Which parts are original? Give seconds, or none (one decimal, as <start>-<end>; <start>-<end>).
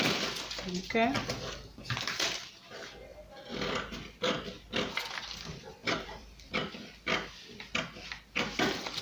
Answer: 0.0-0.8; 2.5-5.8; 6.5-9.0